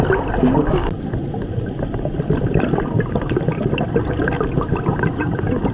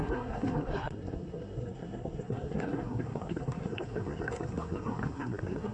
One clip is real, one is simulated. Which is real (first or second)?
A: first